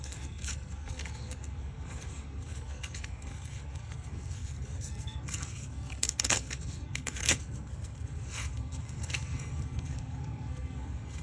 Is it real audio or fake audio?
fake